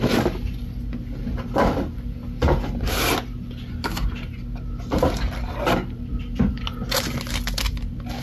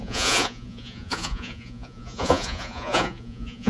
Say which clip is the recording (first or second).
first